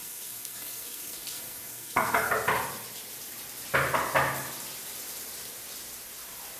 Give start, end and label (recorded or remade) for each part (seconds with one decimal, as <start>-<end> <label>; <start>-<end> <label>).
0.0-2.3 remade; 2.3-6.6 recorded